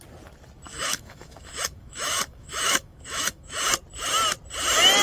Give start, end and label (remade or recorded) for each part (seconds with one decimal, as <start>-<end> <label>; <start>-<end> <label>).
0.0-0.7 recorded; 0.7-3.7 remade; 3.7-5.0 recorded